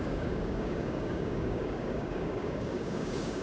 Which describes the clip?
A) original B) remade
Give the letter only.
B